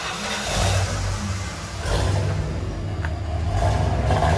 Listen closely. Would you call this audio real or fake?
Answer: real